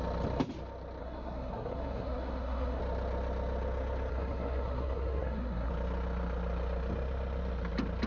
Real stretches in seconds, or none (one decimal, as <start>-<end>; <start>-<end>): 0.0-1.0; 2.8-4.1; 5.7-8.1